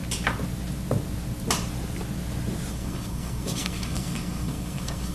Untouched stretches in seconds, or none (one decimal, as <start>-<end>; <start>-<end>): 0.0-2.7